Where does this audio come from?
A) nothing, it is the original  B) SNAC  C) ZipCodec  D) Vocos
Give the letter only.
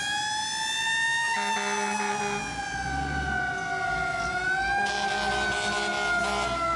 A